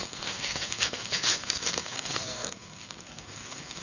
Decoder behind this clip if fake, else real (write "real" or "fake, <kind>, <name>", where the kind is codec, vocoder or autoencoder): fake, codec, SNAC